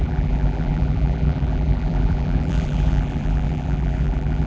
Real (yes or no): no